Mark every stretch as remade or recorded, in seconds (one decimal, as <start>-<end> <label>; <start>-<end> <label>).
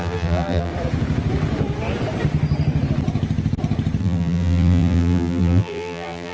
0.0-0.7 remade; 0.7-4.0 recorded; 4.0-6.3 remade